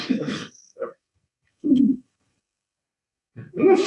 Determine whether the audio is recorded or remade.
remade